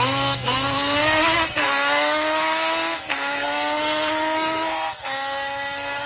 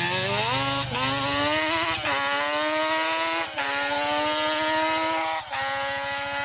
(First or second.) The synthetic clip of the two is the first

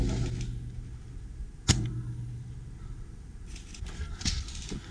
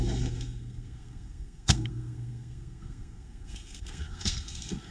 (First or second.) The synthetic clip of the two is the second